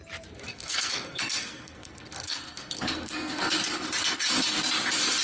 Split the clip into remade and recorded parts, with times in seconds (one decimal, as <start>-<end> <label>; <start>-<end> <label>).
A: 0.0-0.5 recorded; 0.5-3.6 remade; 3.6-5.2 recorded